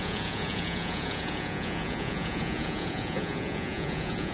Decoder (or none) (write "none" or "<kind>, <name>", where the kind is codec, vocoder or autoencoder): vocoder, Vocos